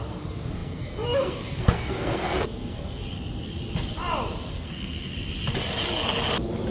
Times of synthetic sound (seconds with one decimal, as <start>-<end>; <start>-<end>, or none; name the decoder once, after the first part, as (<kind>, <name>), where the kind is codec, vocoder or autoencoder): 0.0-3.0 (codec, SNAC); 4.5-5.1